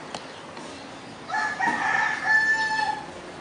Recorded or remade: recorded